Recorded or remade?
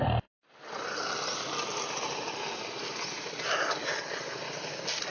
recorded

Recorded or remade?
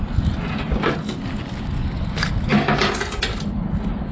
recorded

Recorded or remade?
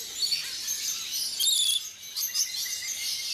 recorded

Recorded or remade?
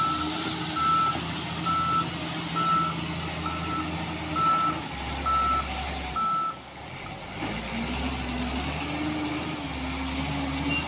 recorded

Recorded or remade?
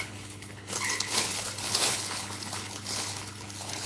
remade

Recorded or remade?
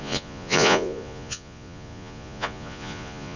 remade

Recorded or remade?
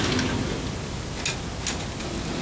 recorded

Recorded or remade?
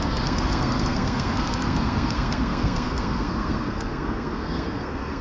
remade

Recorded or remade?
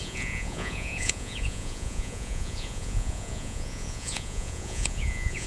remade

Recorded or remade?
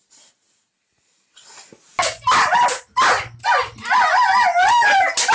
recorded